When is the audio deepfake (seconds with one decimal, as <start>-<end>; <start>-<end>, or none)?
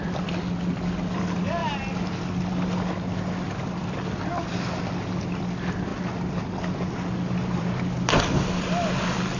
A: none